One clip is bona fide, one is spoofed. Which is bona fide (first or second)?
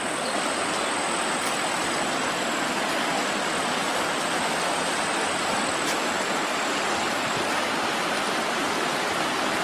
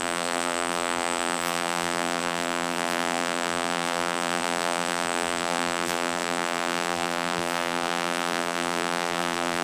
first